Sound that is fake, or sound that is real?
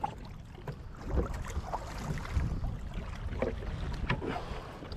real